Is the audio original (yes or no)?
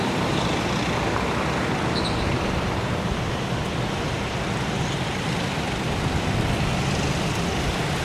yes